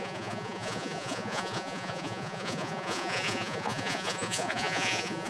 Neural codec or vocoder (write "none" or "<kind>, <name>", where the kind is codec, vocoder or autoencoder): vocoder, Vocos